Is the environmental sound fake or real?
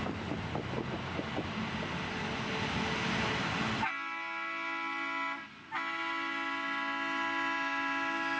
real